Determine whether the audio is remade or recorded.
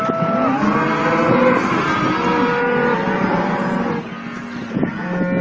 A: recorded